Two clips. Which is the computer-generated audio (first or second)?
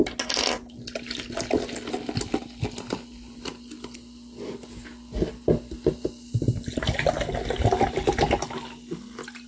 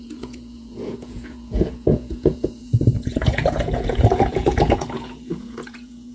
second